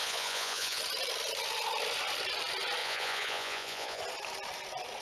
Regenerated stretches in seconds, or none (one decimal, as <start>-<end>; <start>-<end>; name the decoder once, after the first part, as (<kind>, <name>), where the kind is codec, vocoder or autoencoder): 0.0-0.8 (vocoder, Vocos); 2.8-4.0